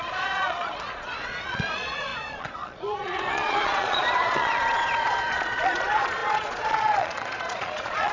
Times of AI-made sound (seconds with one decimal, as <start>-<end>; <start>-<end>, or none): 0.0-8.1